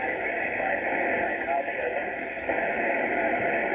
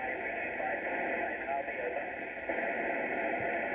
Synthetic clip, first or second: first